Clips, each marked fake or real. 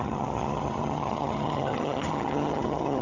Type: fake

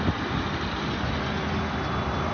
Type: real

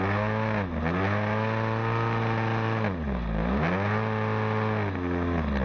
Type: real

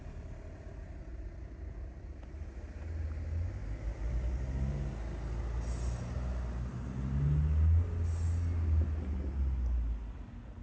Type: real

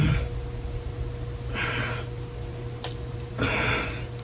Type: real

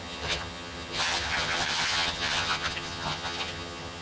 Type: fake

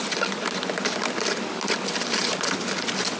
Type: real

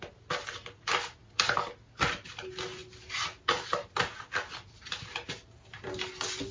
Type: real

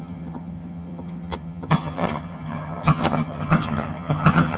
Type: fake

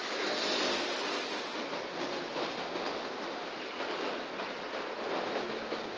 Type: real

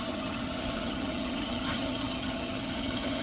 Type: fake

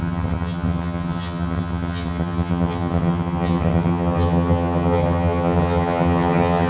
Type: fake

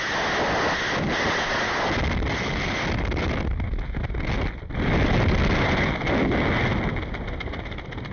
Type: real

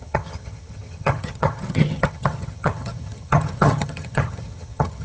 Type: fake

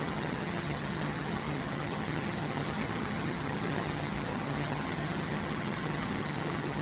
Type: fake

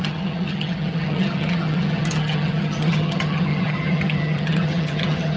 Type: fake